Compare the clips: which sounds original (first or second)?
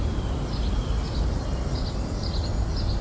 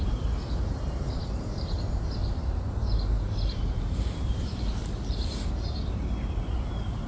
first